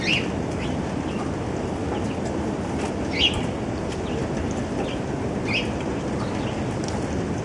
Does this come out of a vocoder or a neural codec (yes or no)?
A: no